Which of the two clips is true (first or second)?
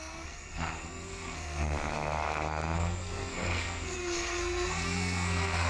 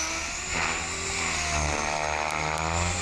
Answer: second